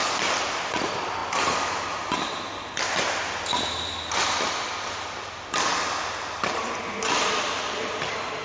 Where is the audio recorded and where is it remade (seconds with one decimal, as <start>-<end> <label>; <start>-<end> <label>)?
0.0-8.4 remade